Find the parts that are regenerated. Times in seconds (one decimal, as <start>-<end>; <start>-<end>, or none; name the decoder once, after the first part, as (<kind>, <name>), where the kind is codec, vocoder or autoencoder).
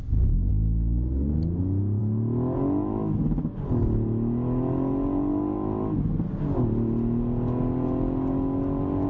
none